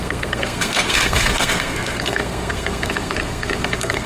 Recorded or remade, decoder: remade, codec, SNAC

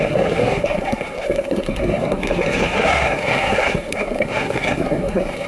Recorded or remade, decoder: remade, codec, SNAC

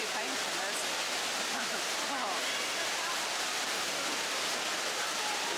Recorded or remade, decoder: recorded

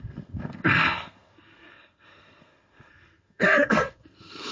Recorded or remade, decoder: remade, codec, SNAC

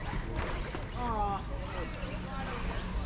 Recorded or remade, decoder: recorded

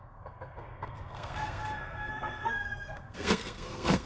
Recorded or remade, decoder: remade, codec, SNAC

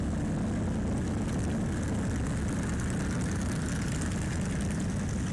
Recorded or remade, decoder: recorded